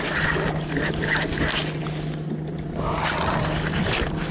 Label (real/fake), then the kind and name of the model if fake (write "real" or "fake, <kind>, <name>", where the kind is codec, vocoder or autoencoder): real